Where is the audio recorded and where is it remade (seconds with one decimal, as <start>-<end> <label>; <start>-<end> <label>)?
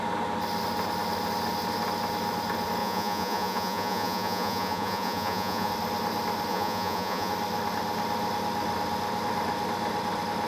0.0-2.8 recorded; 2.8-5.7 remade; 5.7-6.5 recorded; 6.5-7.3 remade; 7.3-10.5 recorded